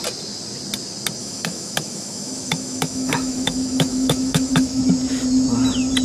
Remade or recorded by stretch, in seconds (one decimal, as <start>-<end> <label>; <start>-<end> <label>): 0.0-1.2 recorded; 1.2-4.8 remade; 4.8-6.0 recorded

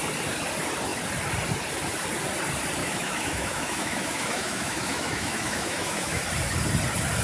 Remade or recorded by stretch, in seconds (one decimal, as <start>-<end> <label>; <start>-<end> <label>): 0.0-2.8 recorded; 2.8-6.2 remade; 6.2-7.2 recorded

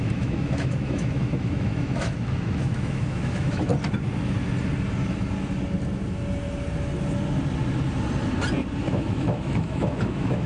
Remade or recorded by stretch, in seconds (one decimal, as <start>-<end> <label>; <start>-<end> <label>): 0.0-3.7 remade; 3.7-8.9 recorded; 8.9-10.5 remade

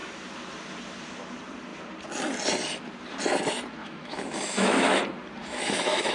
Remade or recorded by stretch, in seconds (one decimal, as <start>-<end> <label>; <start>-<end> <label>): 0.0-3.8 recorded; 3.8-5.0 remade; 5.0-5.4 recorded; 5.4-6.1 remade

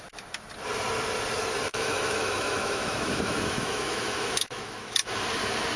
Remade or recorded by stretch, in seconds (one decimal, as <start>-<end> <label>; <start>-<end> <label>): 0.0-1.7 recorded; 1.7-5.1 remade; 5.1-5.8 recorded

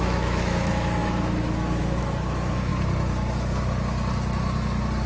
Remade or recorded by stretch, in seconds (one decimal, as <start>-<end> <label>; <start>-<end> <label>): 0.0-2.7 remade; 2.7-5.1 recorded

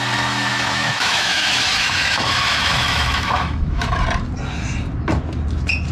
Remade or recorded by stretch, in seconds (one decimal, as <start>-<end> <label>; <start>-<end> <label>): 0.0-0.5 recorded; 0.5-4.0 remade; 4.0-5.9 recorded